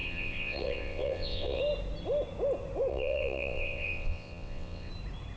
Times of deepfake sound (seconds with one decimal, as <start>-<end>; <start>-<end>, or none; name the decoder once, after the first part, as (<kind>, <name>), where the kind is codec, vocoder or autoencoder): 0.0-1.6 (vocoder, WaveNeXt); 2.9-4.9

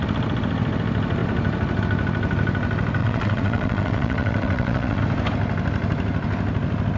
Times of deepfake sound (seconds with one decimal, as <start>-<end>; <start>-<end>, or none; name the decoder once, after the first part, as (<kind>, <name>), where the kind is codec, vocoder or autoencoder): 3.0-5.0 (vocoder, WaveNeXt)

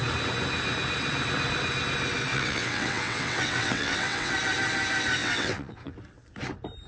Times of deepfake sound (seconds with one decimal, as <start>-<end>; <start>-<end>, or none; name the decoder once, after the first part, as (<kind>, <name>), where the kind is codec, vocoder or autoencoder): 2.3-4.3 (vocoder, WaveNeXt); 5.2-5.9

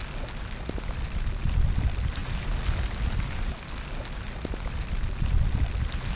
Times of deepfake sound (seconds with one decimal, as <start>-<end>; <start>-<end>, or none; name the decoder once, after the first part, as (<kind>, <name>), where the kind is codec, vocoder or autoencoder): none

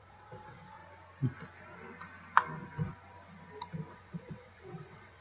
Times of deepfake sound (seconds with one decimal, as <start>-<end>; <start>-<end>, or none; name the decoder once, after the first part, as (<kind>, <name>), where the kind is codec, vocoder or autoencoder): 0.0-0.8 (vocoder, WaveNeXt); 3.9-5.2